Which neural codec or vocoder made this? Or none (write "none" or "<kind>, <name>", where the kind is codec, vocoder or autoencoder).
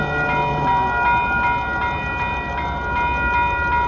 none